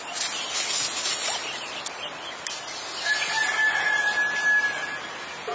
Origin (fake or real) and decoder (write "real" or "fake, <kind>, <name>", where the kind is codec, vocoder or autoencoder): real